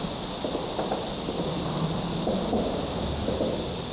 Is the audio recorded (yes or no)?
yes